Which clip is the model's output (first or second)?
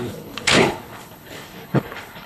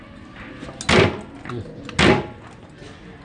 first